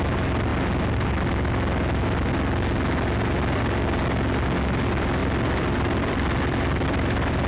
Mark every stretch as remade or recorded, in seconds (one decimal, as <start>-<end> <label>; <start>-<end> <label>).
0.0-5.2 recorded; 5.2-7.5 remade